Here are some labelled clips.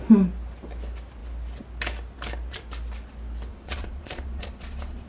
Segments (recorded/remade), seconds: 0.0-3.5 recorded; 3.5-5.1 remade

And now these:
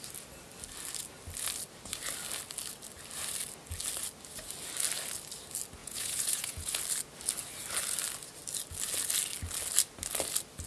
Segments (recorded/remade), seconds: 0.0-5.8 recorded; 5.8-6.8 remade; 6.8-10.7 recorded

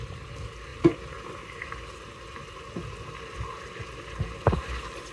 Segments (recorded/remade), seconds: 0.0-5.1 recorded

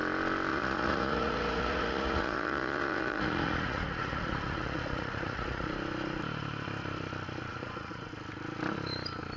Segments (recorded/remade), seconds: 0.0-0.5 recorded; 0.5-5.7 remade; 5.7-7.5 recorded; 7.5-8.1 remade; 8.1-9.4 recorded

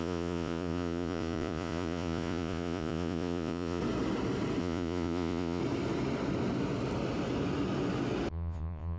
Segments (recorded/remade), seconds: 0.0-3.8 remade; 3.8-4.6 recorded; 4.6-5.6 remade; 5.6-8.3 recorded; 8.3-9.0 remade